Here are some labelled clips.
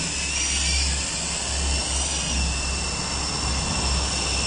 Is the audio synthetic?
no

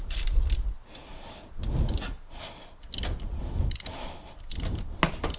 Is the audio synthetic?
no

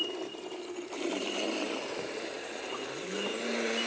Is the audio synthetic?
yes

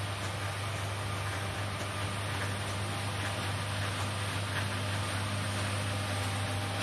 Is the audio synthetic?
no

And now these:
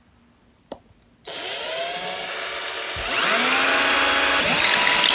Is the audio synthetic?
no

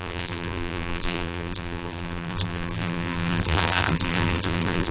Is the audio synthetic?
yes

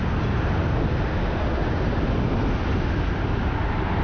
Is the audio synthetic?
no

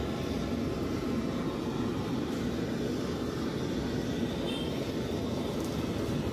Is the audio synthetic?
no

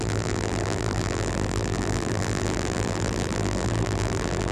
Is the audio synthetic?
yes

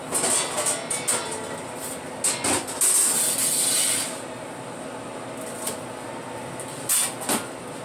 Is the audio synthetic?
no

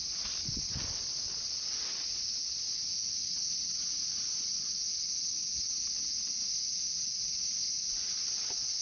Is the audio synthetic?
no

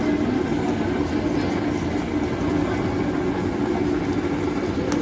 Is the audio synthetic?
no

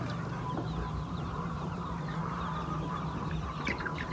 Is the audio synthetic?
yes